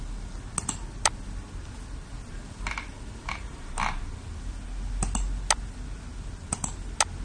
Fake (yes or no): no